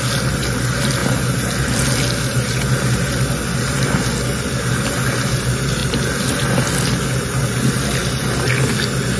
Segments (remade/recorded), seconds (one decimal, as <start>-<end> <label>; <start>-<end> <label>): 0.0-9.2 recorded